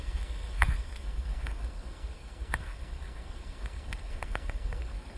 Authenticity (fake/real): fake